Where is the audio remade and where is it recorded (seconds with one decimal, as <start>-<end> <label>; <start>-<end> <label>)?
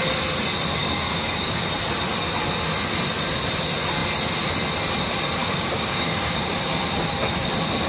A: 0.0-0.8 recorded; 0.8-1.7 remade; 1.7-5.4 recorded; 5.4-6.5 remade; 6.5-7.9 recorded